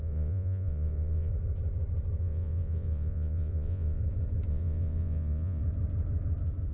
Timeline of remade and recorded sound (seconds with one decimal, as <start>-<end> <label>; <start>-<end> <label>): 0.0-1.3 remade; 1.3-2.2 recorded; 2.2-4.0 remade; 4.0-4.5 recorded; 4.5-5.6 remade; 5.6-6.7 recorded